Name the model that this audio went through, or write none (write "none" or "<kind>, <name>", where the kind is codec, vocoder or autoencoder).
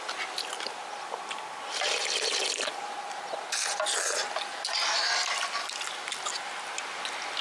none